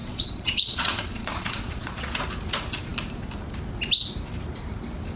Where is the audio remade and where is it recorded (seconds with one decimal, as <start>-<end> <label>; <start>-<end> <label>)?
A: 0.0-2.2 remade; 2.2-5.2 recorded